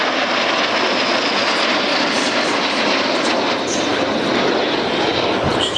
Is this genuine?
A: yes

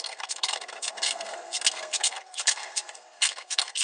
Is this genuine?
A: no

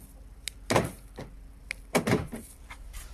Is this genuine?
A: yes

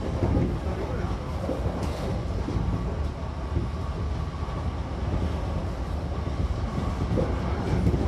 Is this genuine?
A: yes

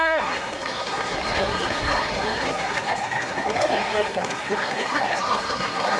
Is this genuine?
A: no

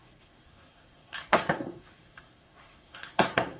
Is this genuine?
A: no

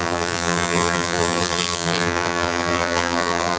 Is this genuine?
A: no